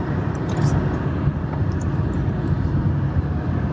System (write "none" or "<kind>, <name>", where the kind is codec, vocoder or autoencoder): none